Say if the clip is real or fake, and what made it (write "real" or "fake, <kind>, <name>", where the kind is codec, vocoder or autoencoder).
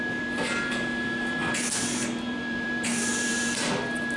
fake, vocoder, BigVGAN v2